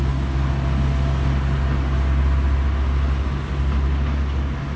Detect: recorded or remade recorded